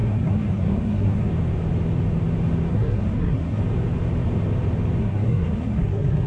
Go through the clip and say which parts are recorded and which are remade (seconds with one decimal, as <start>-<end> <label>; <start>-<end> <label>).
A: 0.0-1.3 remade; 1.3-2.7 recorded; 2.7-3.6 remade; 3.6-5.0 recorded; 5.0-6.3 remade